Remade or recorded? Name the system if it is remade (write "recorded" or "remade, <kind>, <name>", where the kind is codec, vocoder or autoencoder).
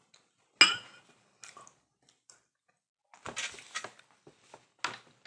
recorded